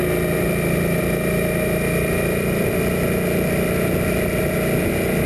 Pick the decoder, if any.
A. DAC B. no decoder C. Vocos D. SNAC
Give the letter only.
B